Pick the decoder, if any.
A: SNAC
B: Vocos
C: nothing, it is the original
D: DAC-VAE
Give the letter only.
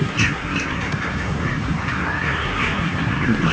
A